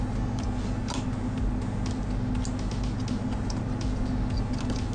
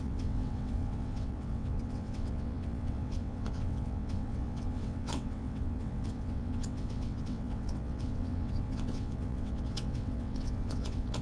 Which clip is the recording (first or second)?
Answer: first